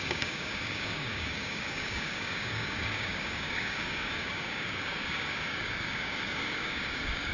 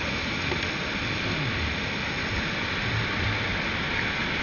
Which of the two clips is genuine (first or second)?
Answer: second